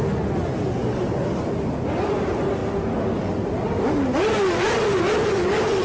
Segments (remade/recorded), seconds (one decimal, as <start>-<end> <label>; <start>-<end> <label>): 0.0-5.8 recorded